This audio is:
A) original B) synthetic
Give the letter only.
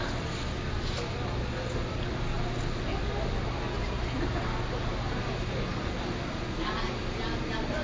A